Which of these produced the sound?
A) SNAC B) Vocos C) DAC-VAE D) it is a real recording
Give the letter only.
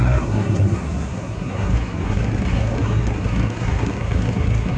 A